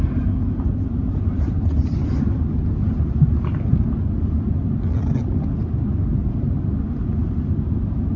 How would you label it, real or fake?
real